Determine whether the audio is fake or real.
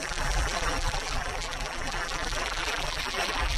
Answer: fake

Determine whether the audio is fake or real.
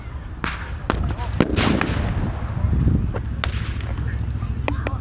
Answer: real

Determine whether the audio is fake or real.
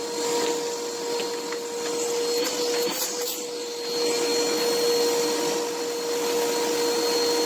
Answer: real